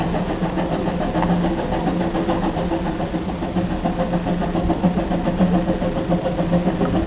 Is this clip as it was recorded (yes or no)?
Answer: yes